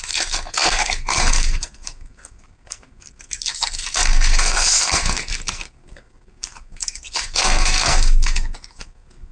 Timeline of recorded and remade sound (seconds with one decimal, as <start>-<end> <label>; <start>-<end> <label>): 0.0-9.3 remade